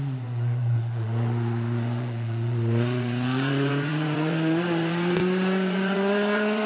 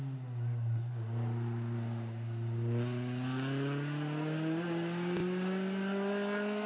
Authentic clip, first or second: second